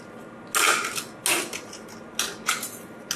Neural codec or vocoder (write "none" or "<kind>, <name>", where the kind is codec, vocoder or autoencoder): none